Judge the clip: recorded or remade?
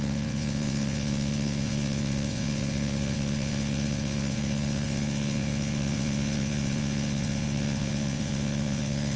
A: remade